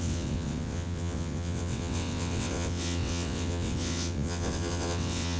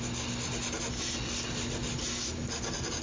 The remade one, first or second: first